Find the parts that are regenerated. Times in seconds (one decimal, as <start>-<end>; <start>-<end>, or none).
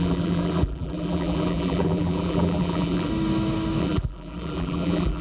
0.0-3.1; 3.8-5.2